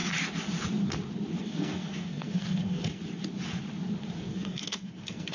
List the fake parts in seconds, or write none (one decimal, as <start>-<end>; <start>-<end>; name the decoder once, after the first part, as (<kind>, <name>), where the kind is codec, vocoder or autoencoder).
1.4-3.0 (codec, SNAC); 4.2-5.3